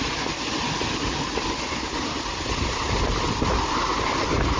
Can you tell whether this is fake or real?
real